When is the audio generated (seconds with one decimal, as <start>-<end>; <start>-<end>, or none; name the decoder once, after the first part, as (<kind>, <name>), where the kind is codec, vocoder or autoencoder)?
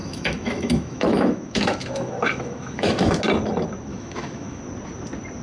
0.0-3.2 (autoencoder, DAC-VAE); 3.9-4.6